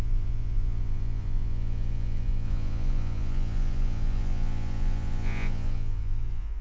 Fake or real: fake